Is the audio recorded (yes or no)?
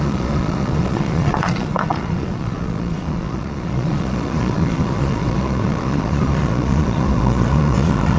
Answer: no